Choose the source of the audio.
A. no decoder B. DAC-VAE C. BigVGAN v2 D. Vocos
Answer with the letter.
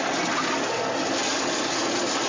A